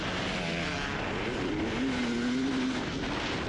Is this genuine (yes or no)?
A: yes